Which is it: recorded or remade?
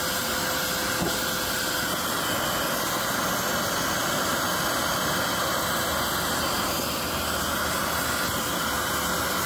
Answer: recorded